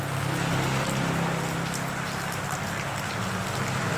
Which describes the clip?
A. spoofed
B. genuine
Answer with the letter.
B